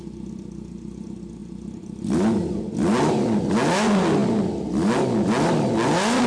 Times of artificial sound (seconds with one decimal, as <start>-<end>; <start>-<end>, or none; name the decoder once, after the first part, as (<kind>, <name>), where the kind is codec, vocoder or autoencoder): none